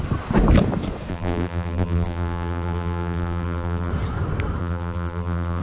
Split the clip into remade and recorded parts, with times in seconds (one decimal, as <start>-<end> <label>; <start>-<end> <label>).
0.0-1.1 recorded; 1.1-3.9 remade; 3.9-4.6 recorded; 4.6-5.6 remade